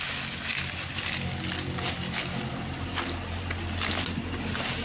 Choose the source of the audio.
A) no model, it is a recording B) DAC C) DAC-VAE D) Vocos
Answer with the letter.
A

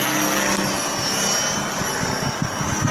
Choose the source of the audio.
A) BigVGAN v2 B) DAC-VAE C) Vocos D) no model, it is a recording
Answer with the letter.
D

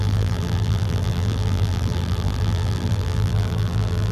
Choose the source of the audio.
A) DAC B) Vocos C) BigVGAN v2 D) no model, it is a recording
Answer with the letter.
C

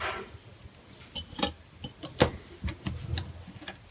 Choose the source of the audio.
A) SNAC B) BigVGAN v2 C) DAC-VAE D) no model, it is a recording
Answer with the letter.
D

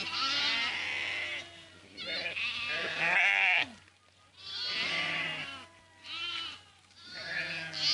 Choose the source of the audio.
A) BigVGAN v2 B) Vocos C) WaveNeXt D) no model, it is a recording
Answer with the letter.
D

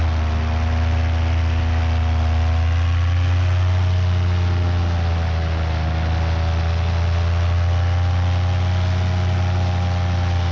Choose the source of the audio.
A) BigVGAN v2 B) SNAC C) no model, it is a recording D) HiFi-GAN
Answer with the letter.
C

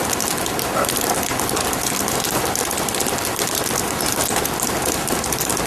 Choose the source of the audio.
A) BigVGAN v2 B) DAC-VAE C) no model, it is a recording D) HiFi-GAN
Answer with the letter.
C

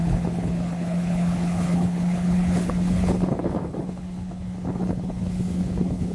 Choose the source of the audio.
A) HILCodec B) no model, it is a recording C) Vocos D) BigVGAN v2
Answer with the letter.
A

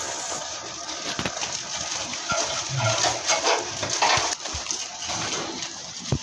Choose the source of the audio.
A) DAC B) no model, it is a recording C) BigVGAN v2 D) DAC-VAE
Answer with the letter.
B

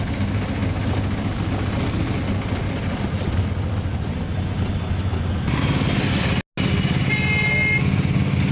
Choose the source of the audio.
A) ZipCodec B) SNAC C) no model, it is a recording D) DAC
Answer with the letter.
C